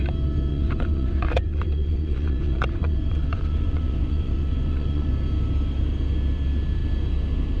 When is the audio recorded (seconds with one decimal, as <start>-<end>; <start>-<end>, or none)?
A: 0.0-0.5; 5.1-7.6

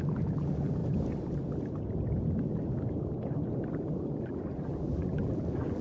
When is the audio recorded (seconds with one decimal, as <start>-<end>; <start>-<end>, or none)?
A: 0.8-4.3

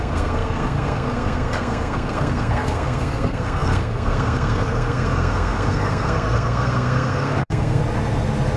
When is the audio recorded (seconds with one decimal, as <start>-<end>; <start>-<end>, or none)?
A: 7.8-8.6

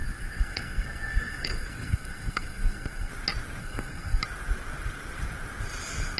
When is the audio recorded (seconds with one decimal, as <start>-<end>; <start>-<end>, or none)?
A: 3.1-3.6; 4.2-6.2

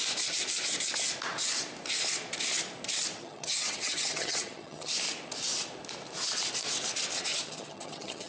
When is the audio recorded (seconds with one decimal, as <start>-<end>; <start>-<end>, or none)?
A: 0.0-3.2; 4.9-7.3